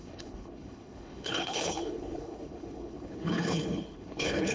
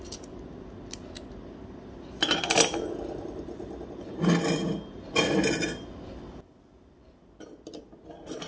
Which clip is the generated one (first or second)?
first